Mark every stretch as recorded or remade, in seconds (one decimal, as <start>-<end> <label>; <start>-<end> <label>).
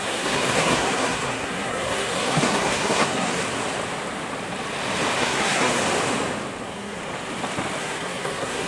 0.0-3.3 remade; 3.3-5.2 recorded; 5.2-5.8 remade; 5.8-6.6 recorded; 6.6-7.0 remade; 7.0-7.8 recorded; 7.8-8.7 remade